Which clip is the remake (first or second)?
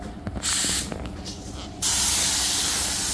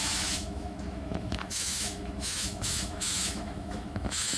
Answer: second